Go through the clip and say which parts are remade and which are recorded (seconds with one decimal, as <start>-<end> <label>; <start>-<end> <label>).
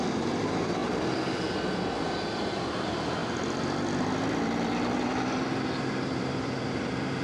0.0-0.8 remade; 0.8-2.4 recorded; 2.4-3.2 remade; 3.2-4.4 recorded; 4.4-7.2 remade